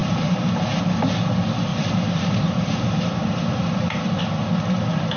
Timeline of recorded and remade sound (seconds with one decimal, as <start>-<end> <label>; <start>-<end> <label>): 0.0-0.8 remade; 0.8-1.7 recorded; 1.7-4.2 remade; 4.2-5.2 recorded